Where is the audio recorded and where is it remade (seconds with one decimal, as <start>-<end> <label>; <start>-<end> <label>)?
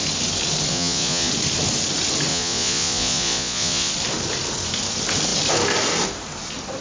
0.0-0.7 recorded; 0.7-1.3 remade; 1.3-2.3 recorded; 2.3-3.9 remade; 3.9-6.8 recorded